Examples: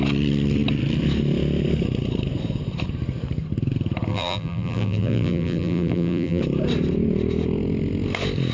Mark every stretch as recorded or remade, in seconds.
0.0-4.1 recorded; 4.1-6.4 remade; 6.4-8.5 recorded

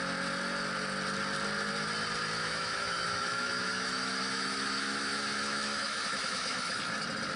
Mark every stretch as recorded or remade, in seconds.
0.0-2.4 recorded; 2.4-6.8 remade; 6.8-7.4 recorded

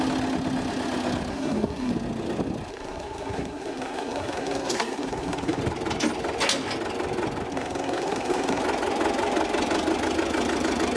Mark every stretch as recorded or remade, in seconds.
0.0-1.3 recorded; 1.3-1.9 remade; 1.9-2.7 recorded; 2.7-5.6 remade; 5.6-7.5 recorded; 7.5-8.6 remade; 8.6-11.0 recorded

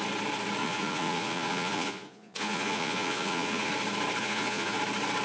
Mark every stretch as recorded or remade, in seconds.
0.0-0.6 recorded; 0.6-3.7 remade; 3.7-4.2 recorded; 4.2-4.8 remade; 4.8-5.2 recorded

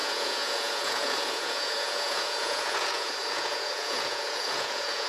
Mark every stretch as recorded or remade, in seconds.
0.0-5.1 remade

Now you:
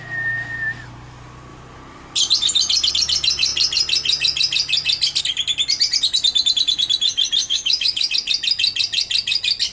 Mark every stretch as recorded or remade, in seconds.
0.0-7.4 recorded; 7.4-8.1 remade; 8.1-9.7 recorded

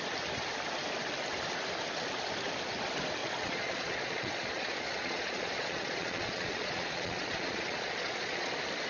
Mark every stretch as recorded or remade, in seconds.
0.0-3.2 recorded; 3.2-8.5 remade; 8.5-8.9 recorded

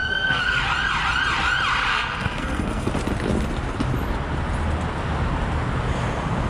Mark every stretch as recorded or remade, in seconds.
0.0-0.6 remade; 0.6-1.9 recorded; 1.9-2.9 remade; 2.9-6.5 recorded